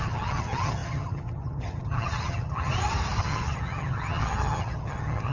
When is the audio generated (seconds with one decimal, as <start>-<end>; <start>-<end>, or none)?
0.0-2.7; 3.2-5.3